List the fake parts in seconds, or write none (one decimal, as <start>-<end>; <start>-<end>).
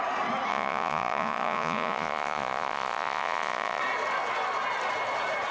0.5-3.8